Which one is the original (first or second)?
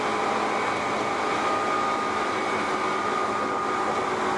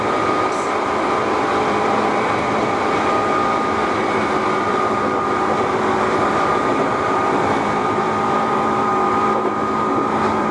first